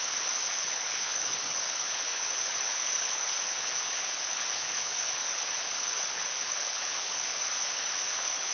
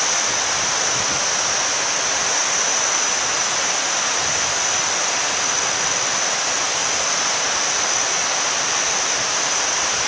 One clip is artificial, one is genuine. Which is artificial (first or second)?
first